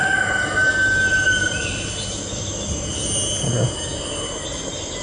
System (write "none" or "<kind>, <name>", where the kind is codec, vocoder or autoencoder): none